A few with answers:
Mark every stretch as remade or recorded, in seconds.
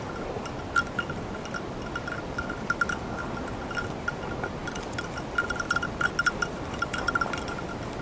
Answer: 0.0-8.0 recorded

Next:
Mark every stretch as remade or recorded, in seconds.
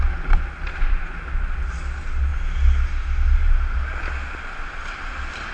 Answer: 0.0-5.5 recorded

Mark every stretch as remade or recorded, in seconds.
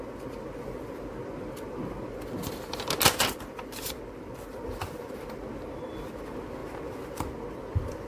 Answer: 0.0-8.1 recorded